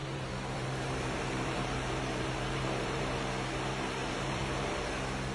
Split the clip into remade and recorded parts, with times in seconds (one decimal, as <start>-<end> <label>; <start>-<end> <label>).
0.0-3.2 remade; 3.2-4.0 recorded; 4.0-4.8 remade; 4.8-5.3 recorded